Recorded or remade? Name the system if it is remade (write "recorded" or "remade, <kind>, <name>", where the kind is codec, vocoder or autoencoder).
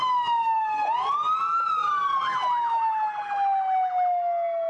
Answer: recorded